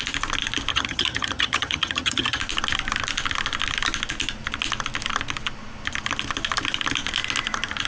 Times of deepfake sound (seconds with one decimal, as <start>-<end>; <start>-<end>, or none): 0.7-2.4